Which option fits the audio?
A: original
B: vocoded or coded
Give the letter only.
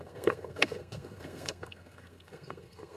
B